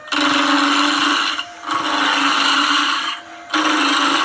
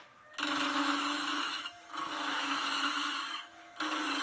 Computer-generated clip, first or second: second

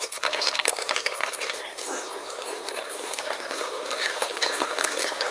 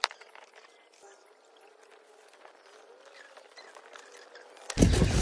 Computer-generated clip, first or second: first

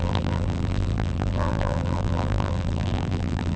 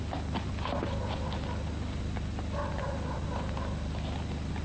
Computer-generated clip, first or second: first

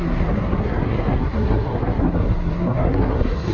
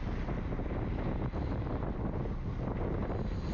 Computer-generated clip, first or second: first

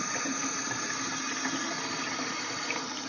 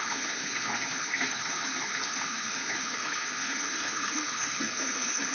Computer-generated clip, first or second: second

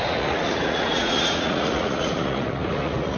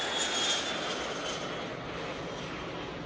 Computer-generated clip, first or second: first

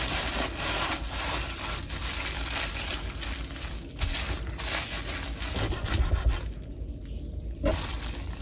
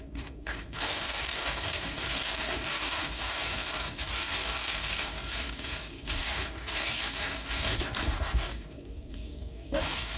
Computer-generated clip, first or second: second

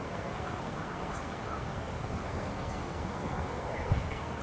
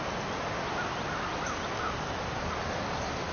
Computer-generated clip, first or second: first